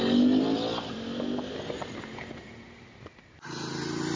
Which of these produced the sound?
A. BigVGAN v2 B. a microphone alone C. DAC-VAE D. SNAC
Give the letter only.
B